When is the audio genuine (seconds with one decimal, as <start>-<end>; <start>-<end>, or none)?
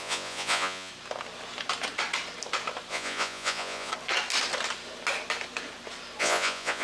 0.9-2.9; 3.9-6.2